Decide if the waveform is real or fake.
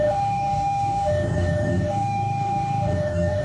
fake